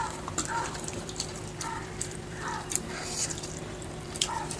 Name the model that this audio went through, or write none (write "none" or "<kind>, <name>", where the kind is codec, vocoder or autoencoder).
vocoder, BigVGAN v2